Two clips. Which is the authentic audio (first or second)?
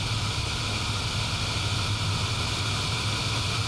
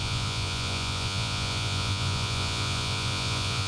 first